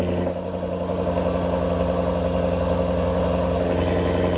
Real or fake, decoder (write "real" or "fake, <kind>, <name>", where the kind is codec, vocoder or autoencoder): real